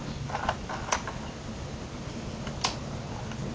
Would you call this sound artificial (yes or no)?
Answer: no